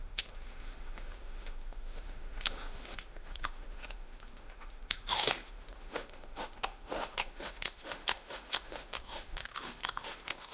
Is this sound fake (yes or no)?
yes